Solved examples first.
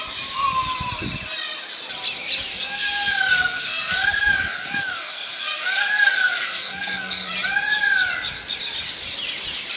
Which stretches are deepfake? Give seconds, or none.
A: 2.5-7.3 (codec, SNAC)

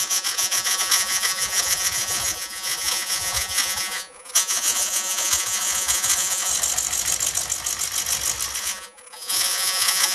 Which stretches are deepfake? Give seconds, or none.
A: 0.0-6.5 (vocoder, Vocos); 8.6-10.1

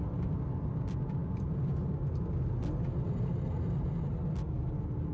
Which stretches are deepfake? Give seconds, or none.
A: none

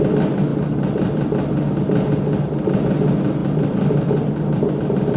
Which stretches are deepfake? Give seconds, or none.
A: none

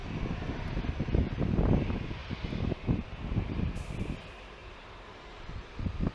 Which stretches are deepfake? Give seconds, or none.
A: 2.2-3.6 (vocoder, BigVGAN v2); 4.6-6.1

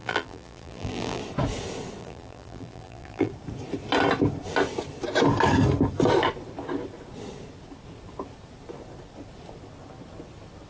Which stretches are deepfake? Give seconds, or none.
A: 0.0-1.2 (vocoder, BigVGAN v2); 2.0-3.3